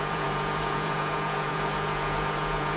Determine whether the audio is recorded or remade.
remade